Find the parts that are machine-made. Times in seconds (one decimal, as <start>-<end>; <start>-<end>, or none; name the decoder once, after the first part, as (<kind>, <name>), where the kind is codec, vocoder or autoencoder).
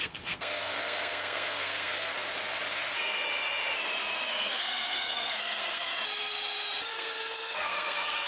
0.0-2.1 (codec, SNAC); 4.3-5.9; 6.9-8.3